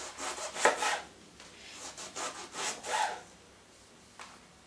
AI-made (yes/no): no